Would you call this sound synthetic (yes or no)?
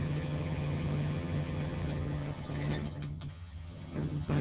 yes